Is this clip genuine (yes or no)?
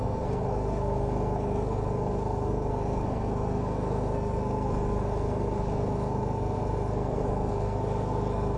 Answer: no